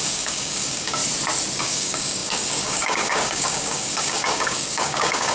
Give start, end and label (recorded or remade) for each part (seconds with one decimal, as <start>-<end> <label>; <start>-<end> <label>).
0.0-1.0 remade; 1.0-1.6 recorded; 1.6-5.3 remade